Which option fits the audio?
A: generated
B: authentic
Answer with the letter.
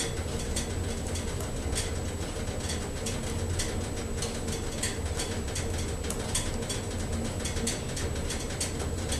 B